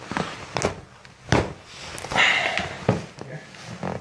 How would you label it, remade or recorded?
recorded